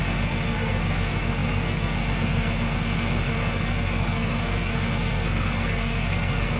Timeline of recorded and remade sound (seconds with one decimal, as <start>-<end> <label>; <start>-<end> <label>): 0.0-6.6 remade